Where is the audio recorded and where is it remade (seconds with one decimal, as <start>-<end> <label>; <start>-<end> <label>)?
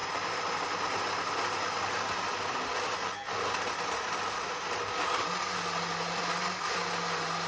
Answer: 0.0-7.5 recorded